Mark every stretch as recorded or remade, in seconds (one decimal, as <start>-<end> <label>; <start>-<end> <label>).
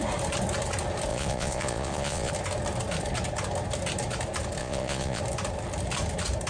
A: 0.0-1.1 recorded; 1.1-2.3 remade; 2.3-4.6 recorded; 4.6-5.2 remade; 5.2-6.5 recorded